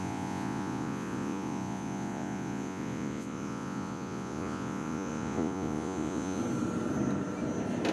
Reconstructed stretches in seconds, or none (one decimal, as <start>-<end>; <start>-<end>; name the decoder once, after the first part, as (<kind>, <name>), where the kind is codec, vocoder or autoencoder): 0.0-6.4 (vocoder, Vocos)